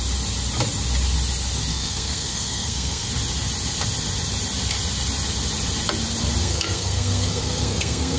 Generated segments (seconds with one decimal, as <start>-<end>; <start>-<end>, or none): 1.7-3.1; 6.4-8.2